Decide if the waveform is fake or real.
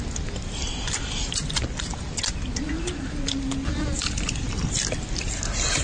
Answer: real